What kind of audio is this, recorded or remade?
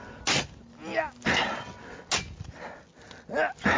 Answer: recorded